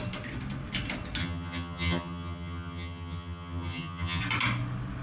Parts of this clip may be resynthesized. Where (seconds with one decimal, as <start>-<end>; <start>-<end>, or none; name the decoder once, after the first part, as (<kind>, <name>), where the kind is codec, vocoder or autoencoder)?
1.2-4.2 (vocoder, HiFi-GAN)